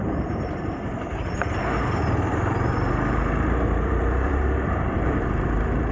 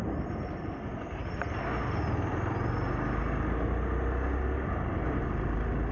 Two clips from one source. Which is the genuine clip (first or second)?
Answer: second